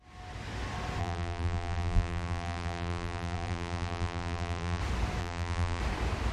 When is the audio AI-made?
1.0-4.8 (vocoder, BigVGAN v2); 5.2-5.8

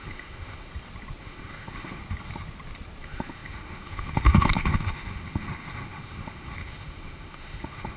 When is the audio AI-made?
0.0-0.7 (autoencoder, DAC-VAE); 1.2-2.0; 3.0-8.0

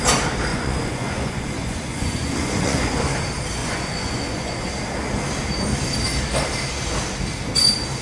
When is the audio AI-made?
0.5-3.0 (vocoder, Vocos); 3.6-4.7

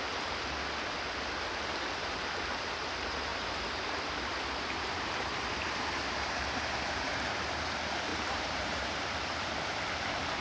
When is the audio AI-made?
3.3-7.6 (vocoder, BigVGAN v2); 8.1-9.5